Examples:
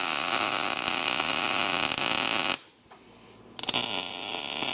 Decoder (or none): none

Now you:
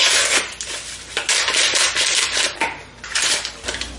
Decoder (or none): vocoder, BigVGAN v2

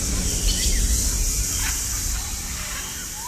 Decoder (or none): none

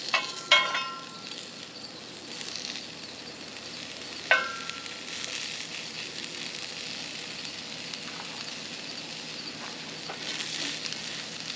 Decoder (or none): none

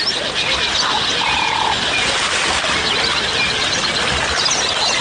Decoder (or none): none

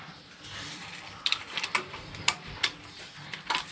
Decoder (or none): vocoder, BigVGAN v2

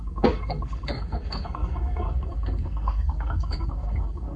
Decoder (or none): codec, SNAC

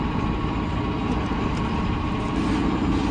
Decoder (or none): vocoder, BigVGAN v2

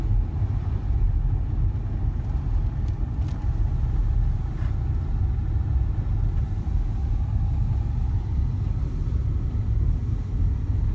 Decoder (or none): none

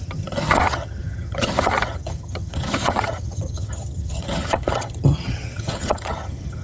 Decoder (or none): vocoder, HiFi-GAN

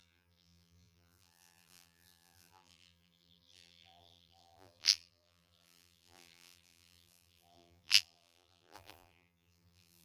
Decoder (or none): vocoder, BigVGAN v2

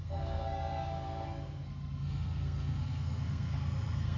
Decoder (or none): codec, SNAC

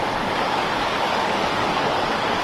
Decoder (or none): codec, DAC